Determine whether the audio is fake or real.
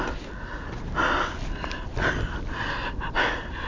real